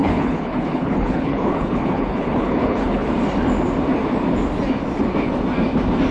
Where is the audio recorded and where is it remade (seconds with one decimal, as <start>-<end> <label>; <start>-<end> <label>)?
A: 0.0-3.1 remade; 3.1-6.1 recorded